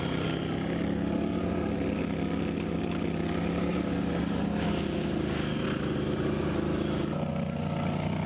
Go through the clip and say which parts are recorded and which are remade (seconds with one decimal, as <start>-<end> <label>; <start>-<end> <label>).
0.0-8.3 recorded